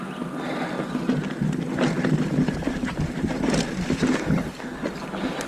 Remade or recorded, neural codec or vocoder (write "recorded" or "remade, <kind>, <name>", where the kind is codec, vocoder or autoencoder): recorded